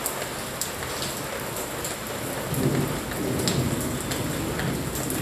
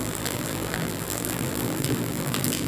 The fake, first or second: second